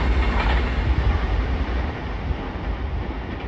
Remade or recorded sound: recorded